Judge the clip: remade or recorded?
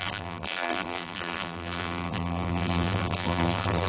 remade